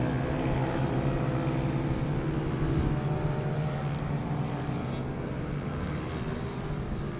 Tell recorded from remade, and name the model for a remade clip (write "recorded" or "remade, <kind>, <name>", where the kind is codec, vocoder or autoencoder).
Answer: recorded